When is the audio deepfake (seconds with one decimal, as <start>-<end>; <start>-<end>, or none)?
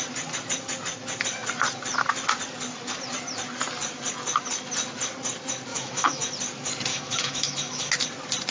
5.7-6.3; 6.9-7.9